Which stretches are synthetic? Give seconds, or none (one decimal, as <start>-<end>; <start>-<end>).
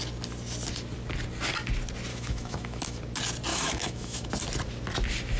2.1-3.0; 3.5-4.3